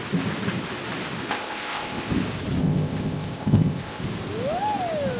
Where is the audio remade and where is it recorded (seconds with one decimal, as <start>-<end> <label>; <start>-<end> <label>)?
0.0-1.3 recorded; 1.3-2.1 remade; 2.1-2.6 recorded; 2.6-4.0 remade; 4.0-5.2 recorded